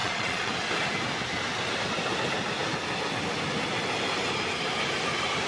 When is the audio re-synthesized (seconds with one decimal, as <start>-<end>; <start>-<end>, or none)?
0.0-0.5